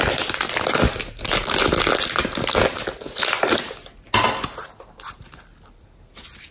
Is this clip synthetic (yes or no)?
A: no